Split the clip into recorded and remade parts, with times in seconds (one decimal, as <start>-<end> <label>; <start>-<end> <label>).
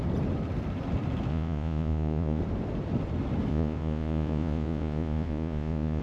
0.0-1.3 recorded; 1.3-2.4 remade; 2.4-3.5 recorded; 3.5-6.0 remade